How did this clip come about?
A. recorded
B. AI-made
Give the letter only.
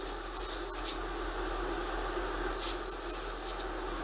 A